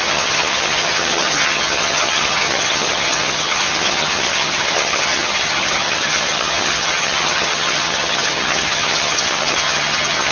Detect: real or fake fake